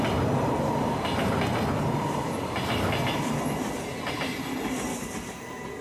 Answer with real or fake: real